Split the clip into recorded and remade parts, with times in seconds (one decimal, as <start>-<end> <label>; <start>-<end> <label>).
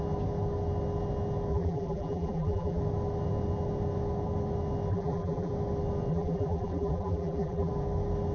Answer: 0.0-1.5 recorded; 1.5-2.8 remade; 2.8-4.9 recorded; 4.9-5.5 remade; 5.5-6.1 recorded; 6.1-7.7 remade; 7.7-8.3 recorded